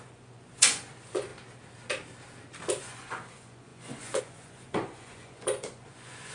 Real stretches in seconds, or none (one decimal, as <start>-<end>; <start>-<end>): 1.3-2.8